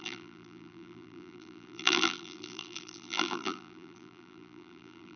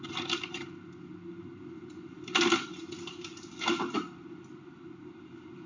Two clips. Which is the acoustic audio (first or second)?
second